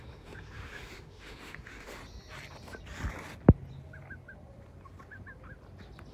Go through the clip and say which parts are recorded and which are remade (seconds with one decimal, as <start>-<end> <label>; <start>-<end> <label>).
0.0-2.0 remade; 2.0-6.1 recorded